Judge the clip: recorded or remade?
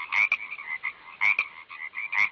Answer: recorded